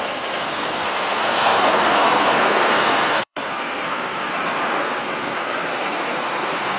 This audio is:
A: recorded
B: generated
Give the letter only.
B